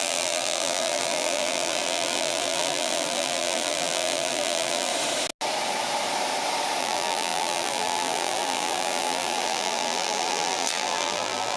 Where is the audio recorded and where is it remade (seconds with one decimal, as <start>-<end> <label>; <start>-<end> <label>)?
0.0-4.9 remade; 4.9-6.8 recorded; 6.8-11.6 remade